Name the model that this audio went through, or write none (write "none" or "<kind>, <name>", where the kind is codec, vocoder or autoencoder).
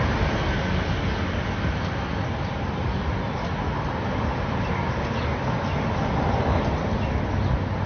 none